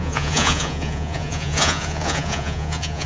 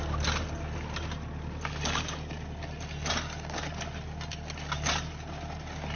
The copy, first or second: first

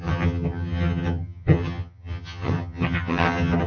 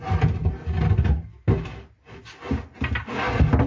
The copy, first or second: first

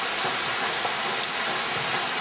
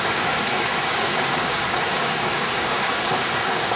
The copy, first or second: second